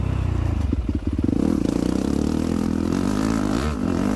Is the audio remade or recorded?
recorded